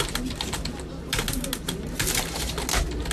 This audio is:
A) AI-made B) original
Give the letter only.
B